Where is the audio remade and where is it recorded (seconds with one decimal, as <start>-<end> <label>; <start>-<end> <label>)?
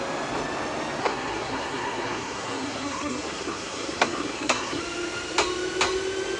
0.0-1.0 recorded; 1.0-4.8 remade; 4.8-6.4 recorded